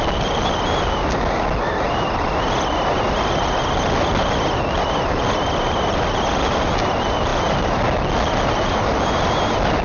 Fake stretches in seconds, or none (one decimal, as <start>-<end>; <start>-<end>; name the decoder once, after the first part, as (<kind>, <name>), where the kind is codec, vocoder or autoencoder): none